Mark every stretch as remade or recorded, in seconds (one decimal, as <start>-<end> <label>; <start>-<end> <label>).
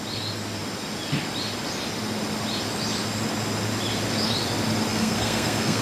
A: 0.0-4.9 recorded; 4.9-5.8 remade